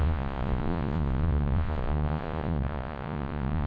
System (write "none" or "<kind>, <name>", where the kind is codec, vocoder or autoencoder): vocoder, Vocos